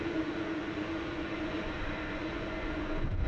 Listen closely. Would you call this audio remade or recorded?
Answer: remade